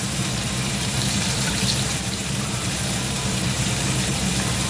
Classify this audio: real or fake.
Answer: fake